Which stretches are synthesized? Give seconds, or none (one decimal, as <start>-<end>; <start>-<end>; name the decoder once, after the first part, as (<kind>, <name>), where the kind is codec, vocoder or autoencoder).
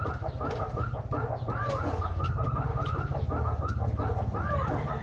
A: 2.7-3.4 (autoencoder, DAC-VAE)